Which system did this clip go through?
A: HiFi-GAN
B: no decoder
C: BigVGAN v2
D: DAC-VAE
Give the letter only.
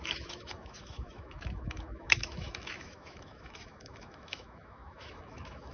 D